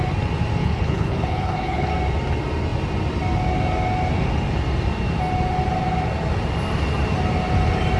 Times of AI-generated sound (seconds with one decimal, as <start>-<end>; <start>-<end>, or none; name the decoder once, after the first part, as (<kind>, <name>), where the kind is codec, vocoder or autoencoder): 0.6-1.9 (codec, HILCodec)

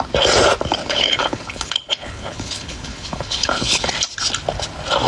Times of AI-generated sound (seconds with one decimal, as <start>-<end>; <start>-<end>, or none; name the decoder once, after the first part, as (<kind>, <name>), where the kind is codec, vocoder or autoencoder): 0.8-3.9 (codec, HILCodec)

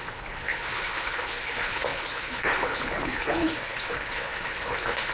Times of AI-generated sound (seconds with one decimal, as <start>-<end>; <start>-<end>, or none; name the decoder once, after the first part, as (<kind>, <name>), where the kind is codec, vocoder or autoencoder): 0.0-5.1 (codec, HILCodec)